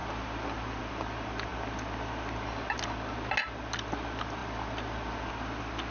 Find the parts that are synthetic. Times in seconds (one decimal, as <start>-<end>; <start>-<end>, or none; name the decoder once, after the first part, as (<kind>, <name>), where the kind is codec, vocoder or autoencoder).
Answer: none